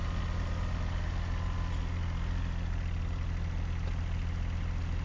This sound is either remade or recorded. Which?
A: recorded